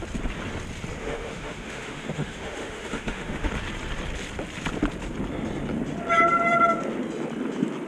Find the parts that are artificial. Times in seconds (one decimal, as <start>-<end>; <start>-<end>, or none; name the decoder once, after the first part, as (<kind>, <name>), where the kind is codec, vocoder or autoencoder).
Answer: 1.0-3.5 (autoencoder, DAC-VAE)